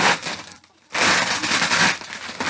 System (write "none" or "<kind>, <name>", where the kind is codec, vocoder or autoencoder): none